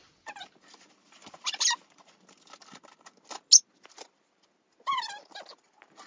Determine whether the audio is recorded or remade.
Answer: recorded